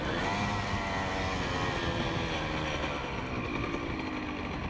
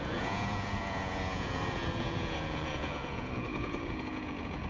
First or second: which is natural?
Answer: first